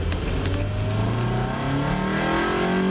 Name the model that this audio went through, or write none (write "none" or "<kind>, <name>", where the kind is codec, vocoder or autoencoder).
none